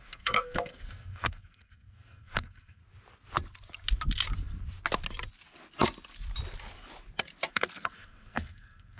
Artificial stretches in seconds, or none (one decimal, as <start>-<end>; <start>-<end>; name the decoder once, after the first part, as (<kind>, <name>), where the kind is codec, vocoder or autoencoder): 0.0-2.8 (codec, SNAC); 7.5-9.0